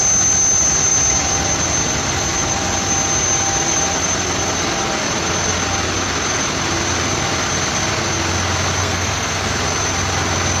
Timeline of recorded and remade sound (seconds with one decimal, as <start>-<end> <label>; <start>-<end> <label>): 0.0-8.8 recorded; 8.8-9.5 remade; 9.5-10.6 recorded